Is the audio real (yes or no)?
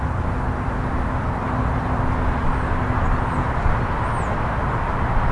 yes